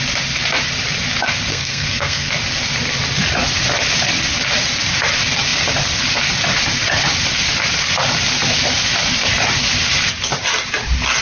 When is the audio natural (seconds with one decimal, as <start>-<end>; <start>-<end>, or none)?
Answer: 0.0-1.5; 2.3-11.2